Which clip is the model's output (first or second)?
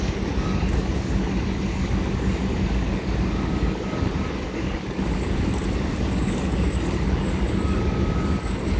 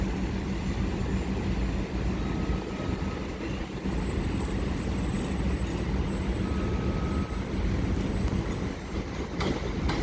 first